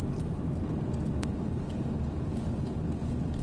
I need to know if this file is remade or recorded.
recorded